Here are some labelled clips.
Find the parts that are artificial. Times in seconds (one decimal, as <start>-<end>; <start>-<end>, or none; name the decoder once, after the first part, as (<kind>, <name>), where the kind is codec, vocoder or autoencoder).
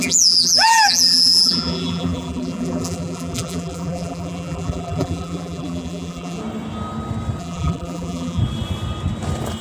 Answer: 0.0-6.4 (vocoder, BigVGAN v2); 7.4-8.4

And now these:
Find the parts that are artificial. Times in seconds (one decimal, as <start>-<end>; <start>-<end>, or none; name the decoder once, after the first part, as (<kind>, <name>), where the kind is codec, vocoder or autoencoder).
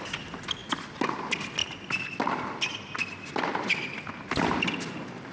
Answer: none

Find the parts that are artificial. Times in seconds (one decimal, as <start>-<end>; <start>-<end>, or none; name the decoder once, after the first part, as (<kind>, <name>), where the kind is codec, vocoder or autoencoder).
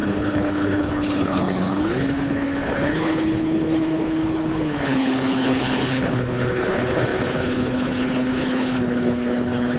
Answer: 0.0-9.8 (codec, HILCodec)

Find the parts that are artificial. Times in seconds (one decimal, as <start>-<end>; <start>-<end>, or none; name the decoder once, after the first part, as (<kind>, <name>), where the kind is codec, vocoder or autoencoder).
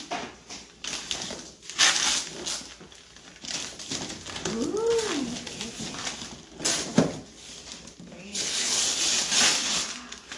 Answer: 8.3-8.8 (codec, HILCodec)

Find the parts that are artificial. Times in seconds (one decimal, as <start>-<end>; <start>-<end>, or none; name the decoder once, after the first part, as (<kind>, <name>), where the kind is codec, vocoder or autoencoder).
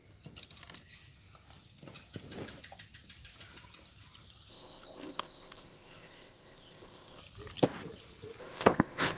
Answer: 4.5-7.2 (codec, ZipCodec); 8.4-9.2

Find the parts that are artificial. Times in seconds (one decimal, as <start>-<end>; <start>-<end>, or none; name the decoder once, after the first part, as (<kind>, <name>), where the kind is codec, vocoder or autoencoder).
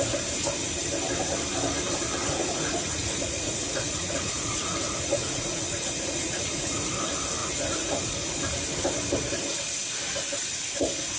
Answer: 2.3-6.9 (vocoder, Vocos); 7.4-8.4